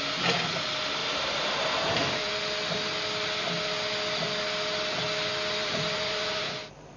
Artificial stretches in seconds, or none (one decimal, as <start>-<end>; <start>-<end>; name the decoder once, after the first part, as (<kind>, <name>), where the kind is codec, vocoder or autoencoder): 1.0-2.4 (vocoder, BigVGAN v2); 5.6-6.5